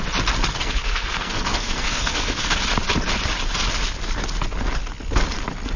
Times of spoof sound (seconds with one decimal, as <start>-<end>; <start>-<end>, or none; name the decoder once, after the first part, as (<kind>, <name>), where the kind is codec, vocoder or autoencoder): 0.6-2.6 (codec, SNAC)